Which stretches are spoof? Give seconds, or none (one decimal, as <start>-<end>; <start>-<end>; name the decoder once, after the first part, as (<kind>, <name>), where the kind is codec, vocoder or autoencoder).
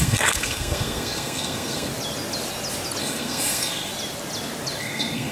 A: 0.0-1.9 (codec, SNAC); 3.0-3.9; 4.8-5.3